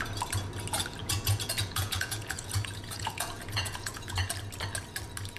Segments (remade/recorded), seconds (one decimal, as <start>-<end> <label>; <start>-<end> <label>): 0.0-1.0 recorded; 1.0-4.2 remade; 4.2-5.4 recorded